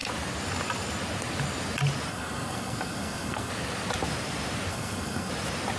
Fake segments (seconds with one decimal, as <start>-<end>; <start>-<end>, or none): 2.1-3.5; 4.7-5.3